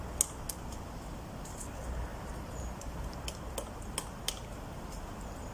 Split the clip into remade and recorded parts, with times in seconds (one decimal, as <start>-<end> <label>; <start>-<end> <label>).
0.0-2.1 recorded; 2.1-3.2 remade; 3.2-5.5 recorded

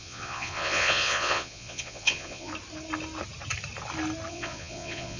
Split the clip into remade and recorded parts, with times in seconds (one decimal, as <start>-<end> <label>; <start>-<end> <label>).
0.0-2.5 remade; 2.5-4.3 recorded; 4.3-5.2 remade

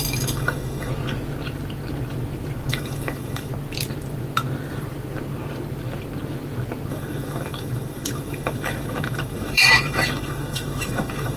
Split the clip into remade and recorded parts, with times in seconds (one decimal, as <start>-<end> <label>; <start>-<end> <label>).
0.0-0.9 remade; 0.9-2.7 recorded; 2.7-3.5 remade; 3.5-6.9 recorded; 6.9-11.4 remade

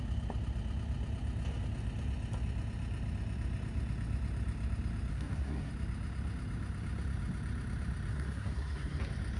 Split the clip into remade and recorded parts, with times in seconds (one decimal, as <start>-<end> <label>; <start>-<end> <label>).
0.0-5.1 recorded; 5.1-5.7 remade; 5.7-8.1 recorded; 8.1-9.0 remade; 9.0-9.4 recorded

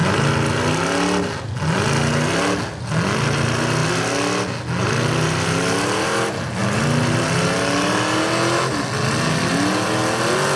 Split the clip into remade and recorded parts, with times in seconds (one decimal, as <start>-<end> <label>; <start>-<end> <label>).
0.0-10.6 recorded

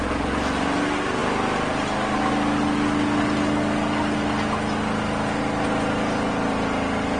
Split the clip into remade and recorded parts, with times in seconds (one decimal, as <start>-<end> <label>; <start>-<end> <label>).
0.0-7.2 recorded

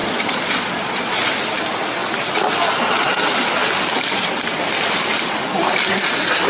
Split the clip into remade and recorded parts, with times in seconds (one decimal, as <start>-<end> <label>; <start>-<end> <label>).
0.0-1.2 remade; 1.2-6.5 recorded